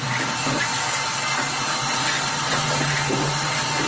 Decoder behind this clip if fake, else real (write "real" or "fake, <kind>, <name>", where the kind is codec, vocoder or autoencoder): real